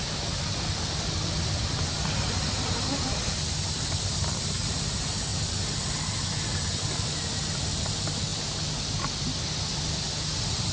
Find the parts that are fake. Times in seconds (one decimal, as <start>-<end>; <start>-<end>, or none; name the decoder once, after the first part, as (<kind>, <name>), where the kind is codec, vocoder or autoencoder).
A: none